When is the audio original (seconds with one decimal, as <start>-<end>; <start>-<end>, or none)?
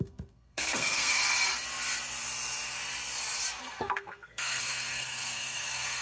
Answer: 1.2-3.6